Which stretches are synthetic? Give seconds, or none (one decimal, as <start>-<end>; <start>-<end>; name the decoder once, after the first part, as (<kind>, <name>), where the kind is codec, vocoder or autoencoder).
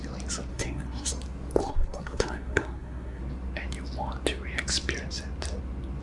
0.5-1.1 (codec, SNAC); 1.6-3.2